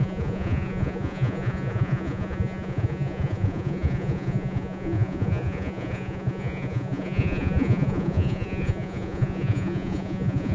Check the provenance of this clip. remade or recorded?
remade